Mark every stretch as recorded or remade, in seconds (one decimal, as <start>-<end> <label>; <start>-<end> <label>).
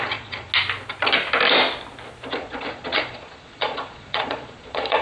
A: 0.0-0.5 remade; 0.5-2.3 recorded; 2.3-5.0 remade